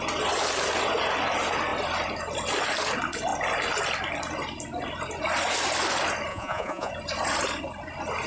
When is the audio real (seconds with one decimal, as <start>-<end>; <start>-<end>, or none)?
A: 0.0-6.3; 6.9-8.3